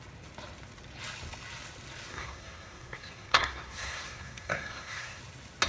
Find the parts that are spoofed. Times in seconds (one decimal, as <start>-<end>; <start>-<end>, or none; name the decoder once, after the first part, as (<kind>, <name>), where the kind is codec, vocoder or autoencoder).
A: 2.1-5.2 (codec, SNAC)